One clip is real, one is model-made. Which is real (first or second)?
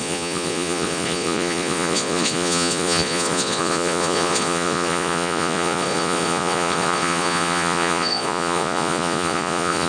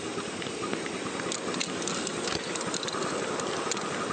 second